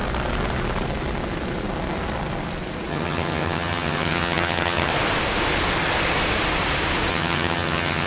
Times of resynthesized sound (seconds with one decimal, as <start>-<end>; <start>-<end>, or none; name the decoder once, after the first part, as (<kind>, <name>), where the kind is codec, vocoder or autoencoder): 2.9-4.9 (vocoder, HiFi-GAN); 7.1-8.1